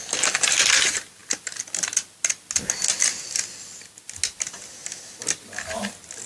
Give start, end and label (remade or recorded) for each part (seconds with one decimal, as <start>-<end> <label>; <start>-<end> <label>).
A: 0.0-6.3 recorded